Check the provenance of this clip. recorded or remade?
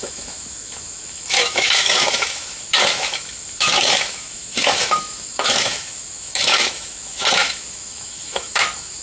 remade